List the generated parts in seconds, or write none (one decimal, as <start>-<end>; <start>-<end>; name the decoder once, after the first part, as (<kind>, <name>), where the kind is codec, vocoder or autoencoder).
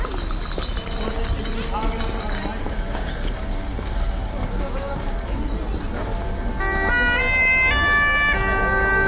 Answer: 2.6-5.4 (codec, DAC); 5.9-6.5